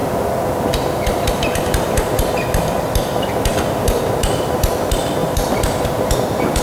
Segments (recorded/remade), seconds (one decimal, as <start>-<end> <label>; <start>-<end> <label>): 0.0-6.6 remade